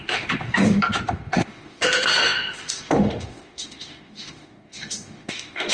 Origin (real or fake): fake